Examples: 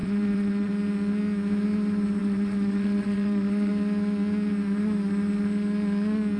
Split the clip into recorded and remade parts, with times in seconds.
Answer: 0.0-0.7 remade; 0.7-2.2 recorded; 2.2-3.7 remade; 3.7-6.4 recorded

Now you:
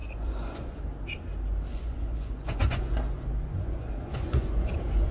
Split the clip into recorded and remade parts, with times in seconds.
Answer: 0.0-0.8 remade; 0.8-1.7 recorded; 1.7-5.1 remade